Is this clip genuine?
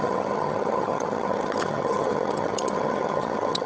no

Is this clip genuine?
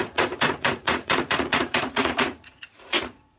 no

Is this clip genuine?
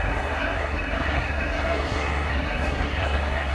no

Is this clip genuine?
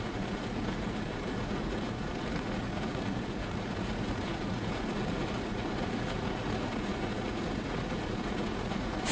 no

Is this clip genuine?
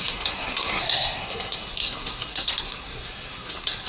no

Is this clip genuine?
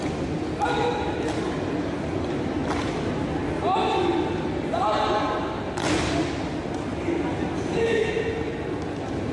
yes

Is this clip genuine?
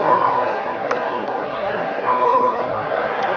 no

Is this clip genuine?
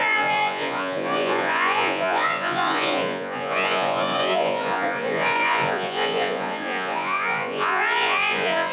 no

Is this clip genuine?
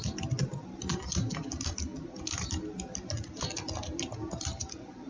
yes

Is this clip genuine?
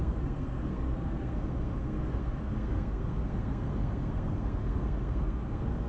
no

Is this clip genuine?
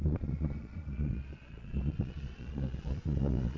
no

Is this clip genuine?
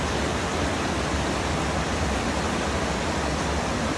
yes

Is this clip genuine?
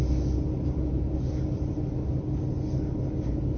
yes